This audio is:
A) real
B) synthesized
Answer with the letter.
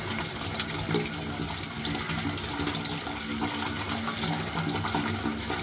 A